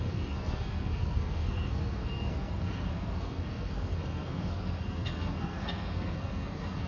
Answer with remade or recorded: remade